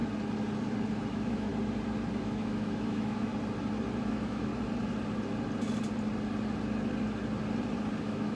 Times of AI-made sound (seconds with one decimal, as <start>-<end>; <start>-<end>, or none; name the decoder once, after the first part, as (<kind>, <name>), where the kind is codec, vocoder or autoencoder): 1.1-1.5 (autoencoder, DAC-VAE); 2.2-3.3; 4.1-4.5; 8.0-8.4